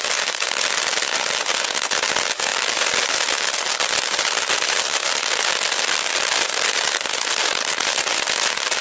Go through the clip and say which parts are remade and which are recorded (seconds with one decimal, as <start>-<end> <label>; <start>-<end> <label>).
0.0-8.8 recorded